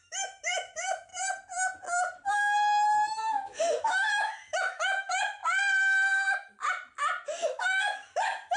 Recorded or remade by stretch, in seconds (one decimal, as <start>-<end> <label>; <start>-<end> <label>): 0.0-1.1 remade; 1.1-2.3 recorded; 2.3-5.4 remade; 5.4-7.4 recorded; 7.4-8.6 remade